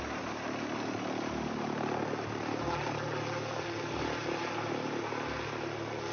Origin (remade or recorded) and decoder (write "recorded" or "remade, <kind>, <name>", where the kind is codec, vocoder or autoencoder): recorded